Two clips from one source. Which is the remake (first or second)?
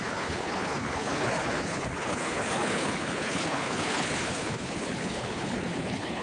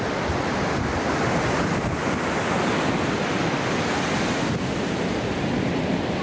first